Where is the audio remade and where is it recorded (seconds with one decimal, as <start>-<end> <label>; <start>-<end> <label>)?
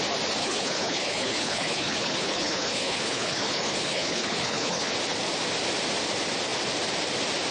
0.0-0.4 recorded; 0.4-4.9 remade; 4.9-7.5 recorded